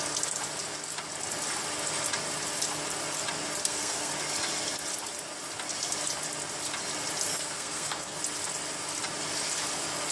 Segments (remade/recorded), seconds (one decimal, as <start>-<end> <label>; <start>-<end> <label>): 0.0-3.6 recorded; 3.6-4.1 remade; 4.1-7.3 recorded; 7.3-8.2 remade; 8.2-10.1 recorded